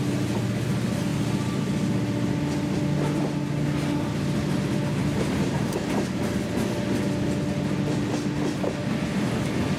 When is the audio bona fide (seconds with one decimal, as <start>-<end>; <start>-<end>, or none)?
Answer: 0.0-5.0; 6.2-9.8